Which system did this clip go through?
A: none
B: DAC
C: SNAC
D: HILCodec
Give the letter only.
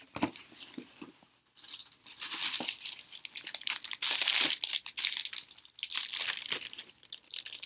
A